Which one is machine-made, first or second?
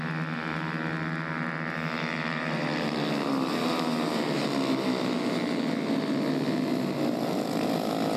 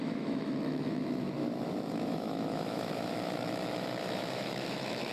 second